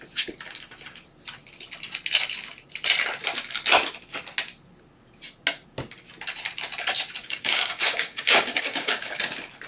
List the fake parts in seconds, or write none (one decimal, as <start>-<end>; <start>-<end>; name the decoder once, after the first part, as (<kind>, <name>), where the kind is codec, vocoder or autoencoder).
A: 7.2-9.2 (codec, DAC)